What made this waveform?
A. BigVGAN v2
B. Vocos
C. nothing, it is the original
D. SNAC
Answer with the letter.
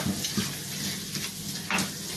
C